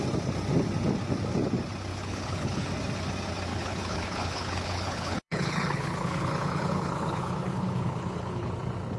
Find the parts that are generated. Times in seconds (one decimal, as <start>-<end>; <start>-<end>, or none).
1.9-2.7; 3.5-8.5